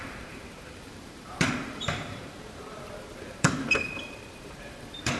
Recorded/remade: remade